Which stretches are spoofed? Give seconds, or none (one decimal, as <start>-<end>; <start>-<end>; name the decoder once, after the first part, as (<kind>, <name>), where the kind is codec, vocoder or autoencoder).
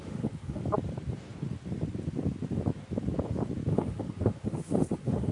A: 0.0-0.6 (autoencoder, DAC-VAE); 3.7-5.3